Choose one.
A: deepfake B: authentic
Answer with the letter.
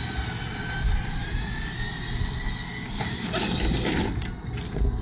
B